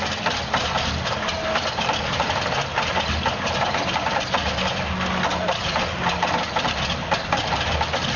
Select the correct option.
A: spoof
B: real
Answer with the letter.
A